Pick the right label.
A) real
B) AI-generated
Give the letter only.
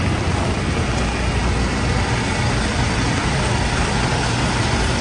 A